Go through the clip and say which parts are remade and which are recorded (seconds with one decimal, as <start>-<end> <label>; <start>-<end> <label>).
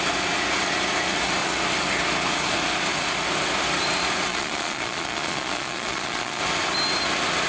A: 0.0-4.3 recorded; 4.3-6.4 remade; 6.4-7.5 recorded